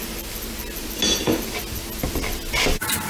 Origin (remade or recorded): recorded